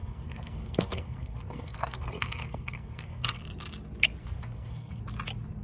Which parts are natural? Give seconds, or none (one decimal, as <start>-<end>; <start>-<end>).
3.4-4.2; 5.0-5.6